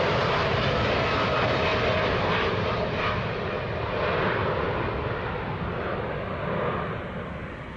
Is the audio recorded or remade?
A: recorded